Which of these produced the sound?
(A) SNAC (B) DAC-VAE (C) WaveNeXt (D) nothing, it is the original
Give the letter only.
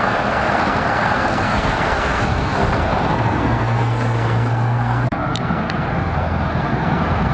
A